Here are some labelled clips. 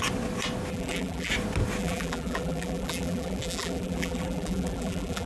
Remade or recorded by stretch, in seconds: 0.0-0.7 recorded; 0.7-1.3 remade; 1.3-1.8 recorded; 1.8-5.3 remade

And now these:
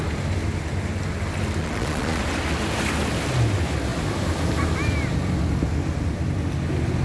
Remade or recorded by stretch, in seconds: 0.0-1.6 recorded; 1.6-2.2 remade; 2.2-7.0 recorded

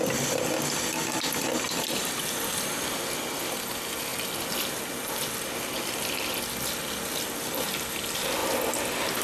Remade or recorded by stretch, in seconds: 0.0-9.2 recorded

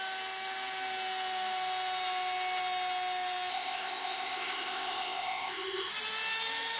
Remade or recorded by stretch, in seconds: 0.0-3.5 recorded; 3.5-5.9 remade; 5.9-6.8 recorded